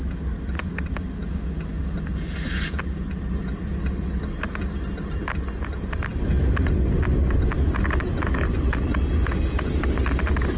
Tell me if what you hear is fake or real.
real